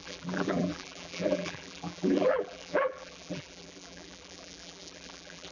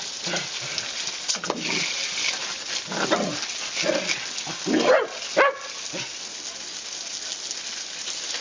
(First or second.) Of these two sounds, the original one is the second